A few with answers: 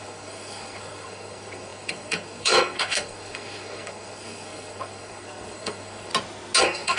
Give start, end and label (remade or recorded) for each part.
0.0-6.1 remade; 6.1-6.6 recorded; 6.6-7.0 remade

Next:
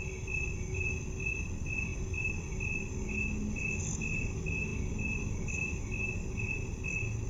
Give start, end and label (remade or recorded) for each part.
0.0-7.3 recorded